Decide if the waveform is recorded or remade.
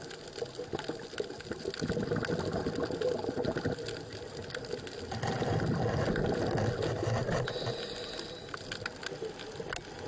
recorded